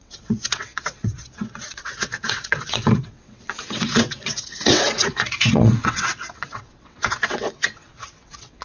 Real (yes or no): no